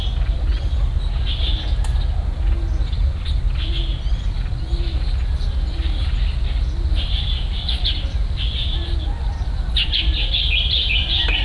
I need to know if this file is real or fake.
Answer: real